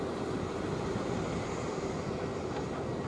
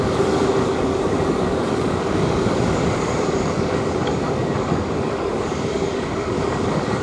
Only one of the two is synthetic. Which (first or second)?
second